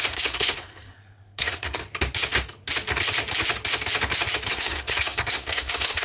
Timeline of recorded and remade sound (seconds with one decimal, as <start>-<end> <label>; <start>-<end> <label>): 0.0-1.8 remade; 1.8-4.5 recorded; 4.5-6.0 remade